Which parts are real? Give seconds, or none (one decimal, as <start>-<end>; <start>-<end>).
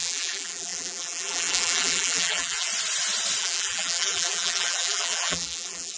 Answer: 2.7-3.4